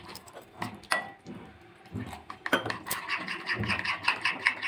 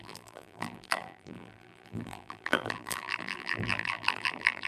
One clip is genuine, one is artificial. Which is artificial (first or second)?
second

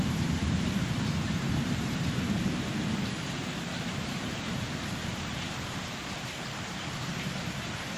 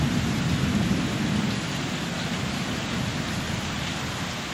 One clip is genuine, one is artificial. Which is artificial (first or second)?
first